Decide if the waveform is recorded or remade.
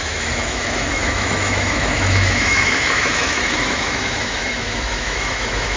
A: remade